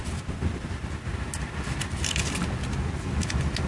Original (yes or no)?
yes